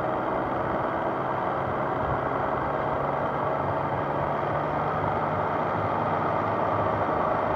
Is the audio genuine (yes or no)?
yes